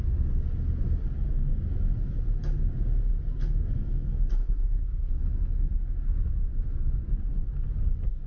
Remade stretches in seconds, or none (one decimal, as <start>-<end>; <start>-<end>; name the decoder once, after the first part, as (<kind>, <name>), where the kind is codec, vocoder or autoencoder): 4.4-5.1 (codec, SNAC)